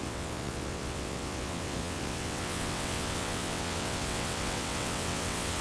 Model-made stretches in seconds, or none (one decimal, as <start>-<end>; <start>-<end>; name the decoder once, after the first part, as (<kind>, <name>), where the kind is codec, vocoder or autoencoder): 0.0-5.6 (vocoder, WaveNeXt)